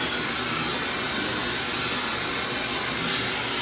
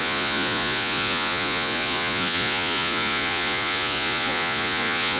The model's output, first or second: second